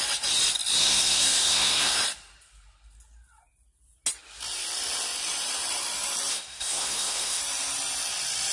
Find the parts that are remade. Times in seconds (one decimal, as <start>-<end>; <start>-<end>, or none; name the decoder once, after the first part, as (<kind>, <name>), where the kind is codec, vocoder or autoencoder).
0.8-2.0 (codec, SNAC); 6.3-7.4